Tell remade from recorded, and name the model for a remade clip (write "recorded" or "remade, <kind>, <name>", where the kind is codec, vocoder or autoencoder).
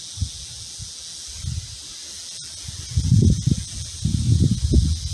recorded